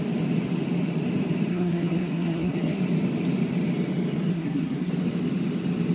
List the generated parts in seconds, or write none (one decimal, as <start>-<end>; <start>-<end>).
1.5-2.8; 4.3-4.9